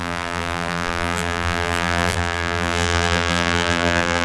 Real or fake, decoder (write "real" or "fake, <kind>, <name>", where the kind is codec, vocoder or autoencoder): fake, vocoder, BigVGAN v2